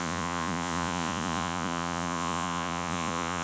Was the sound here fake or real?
fake